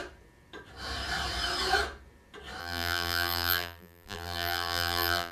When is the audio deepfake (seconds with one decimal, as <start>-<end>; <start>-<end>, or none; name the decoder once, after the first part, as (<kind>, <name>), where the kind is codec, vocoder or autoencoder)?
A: 2.6-5.3 (vocoder, BigVGAN v2)